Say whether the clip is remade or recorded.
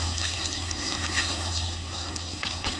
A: remade